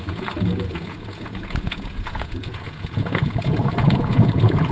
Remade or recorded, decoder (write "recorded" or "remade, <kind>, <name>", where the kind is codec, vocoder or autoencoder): remade, vocoder, Vocos